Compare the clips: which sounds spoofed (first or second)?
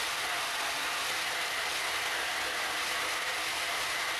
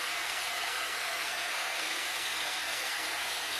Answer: second